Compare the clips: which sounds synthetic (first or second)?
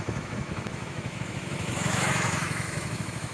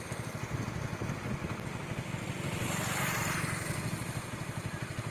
first